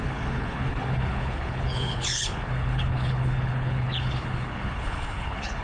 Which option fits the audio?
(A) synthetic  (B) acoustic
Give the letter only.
A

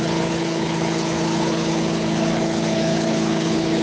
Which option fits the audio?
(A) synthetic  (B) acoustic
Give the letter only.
A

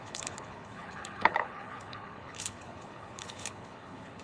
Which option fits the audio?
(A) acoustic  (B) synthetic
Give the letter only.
B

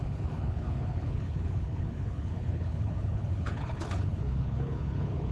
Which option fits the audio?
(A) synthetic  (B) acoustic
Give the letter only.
A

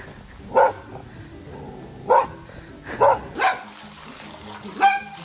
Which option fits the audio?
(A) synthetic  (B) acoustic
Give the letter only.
B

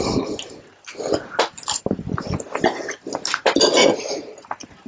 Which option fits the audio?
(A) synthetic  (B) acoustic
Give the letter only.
B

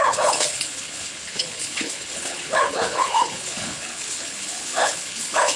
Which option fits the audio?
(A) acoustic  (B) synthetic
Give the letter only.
B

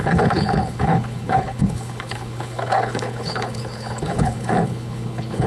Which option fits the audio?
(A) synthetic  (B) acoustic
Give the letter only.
A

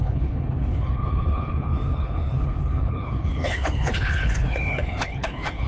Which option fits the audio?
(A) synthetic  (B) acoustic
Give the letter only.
A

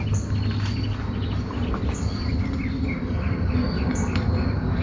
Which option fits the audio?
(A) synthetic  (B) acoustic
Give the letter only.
B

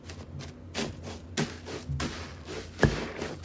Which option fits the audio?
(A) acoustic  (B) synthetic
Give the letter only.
A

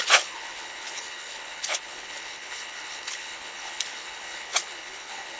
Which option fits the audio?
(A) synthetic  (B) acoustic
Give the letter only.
A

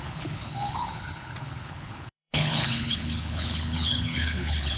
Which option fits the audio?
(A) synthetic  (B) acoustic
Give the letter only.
A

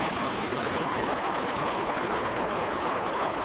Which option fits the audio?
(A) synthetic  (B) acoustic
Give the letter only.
A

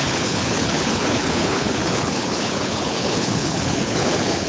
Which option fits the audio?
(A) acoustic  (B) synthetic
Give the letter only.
B